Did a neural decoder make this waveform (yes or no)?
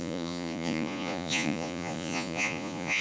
yes